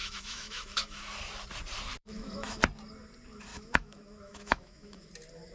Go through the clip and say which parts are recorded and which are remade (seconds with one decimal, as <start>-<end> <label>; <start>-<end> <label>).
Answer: 0.0-1.0 remade; 1.0-2.0 recorded; 2.0-2.6 remade; 2.6-3.5 recorded; 3.5-5.1 remade; 5.1-5.5 recorded